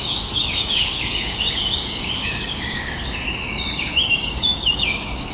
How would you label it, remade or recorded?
remade